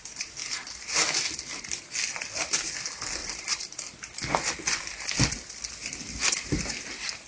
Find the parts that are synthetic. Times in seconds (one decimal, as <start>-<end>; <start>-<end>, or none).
none